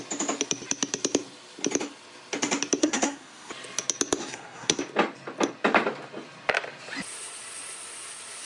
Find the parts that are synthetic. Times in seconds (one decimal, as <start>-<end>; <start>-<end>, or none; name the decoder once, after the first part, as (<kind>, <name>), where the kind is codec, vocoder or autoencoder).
2.8-3.5 (codec, SNAC); 4.2-4.8